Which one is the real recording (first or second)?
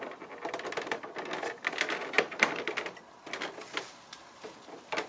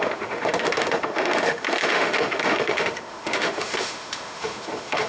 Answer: first